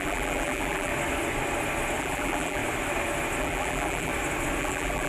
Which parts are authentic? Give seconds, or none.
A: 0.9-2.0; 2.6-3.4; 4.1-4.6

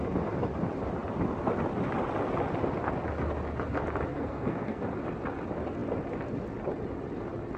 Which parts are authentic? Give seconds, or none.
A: 0.0-4.1; 4.8-7.6

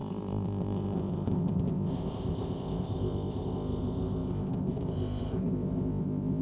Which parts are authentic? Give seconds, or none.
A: none

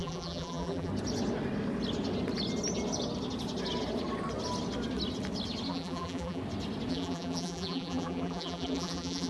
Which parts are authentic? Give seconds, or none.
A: 0.9-5.7; 6.4-6.9

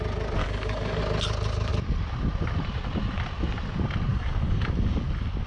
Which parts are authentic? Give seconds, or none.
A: 0.0-0.4; 1.0-4.1; 5.0-5.5

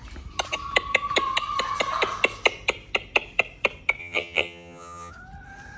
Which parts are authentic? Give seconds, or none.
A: 0.0-4.0; 5.1-5.8

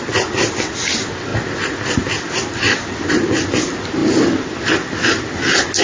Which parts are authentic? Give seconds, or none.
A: 0.0-5.8

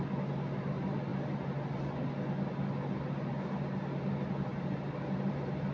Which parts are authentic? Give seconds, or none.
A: 0.0-5.7